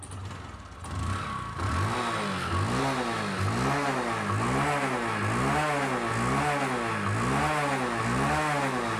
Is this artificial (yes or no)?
no